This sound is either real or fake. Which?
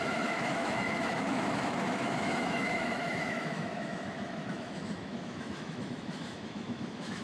fake